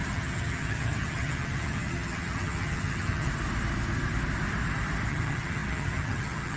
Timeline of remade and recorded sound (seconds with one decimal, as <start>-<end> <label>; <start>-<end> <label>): 0.0-3.3 remade; 3.3-5.1 recorded; 5.1-6.6 remade